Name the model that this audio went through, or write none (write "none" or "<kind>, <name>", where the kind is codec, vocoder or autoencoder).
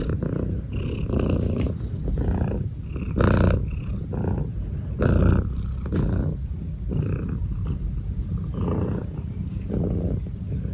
none